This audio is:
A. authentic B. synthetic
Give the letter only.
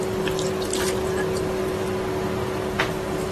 B